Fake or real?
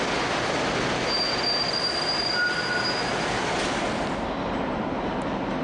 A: real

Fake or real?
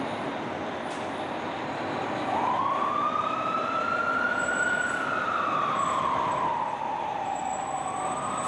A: fake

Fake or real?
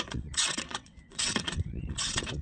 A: fake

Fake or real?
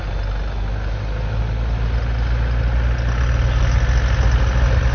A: real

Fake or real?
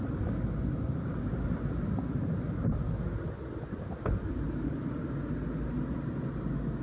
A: real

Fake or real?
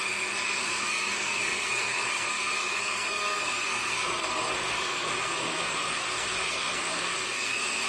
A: fake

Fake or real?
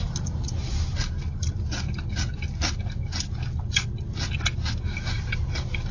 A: real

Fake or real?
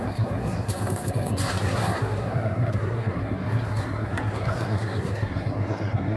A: fake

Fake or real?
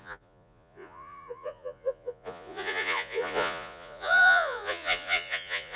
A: fake